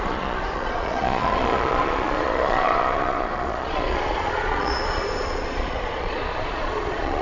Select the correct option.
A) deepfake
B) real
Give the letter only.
A